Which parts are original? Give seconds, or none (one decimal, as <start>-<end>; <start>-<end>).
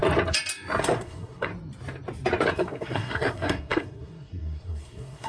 0.0-0.8; 1.5-2.5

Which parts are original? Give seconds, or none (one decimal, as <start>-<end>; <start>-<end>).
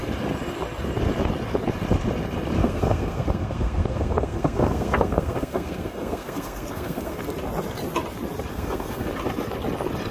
0.0-2.6; 7.2-8.5; 9.1-10.1